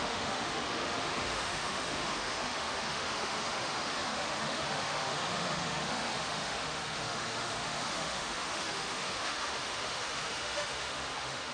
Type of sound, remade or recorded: remade